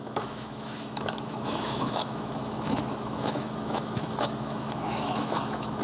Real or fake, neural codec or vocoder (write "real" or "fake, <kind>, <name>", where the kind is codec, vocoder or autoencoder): fake, autoencoder, DAC-VAE